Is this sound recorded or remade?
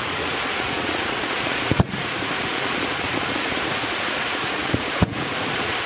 remade